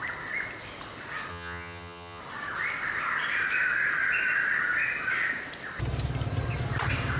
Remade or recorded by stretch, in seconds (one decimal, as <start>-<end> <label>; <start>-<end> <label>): 0.0-1.3 recorded; 1.3-2.2 remade; 2.2-7.2 recorded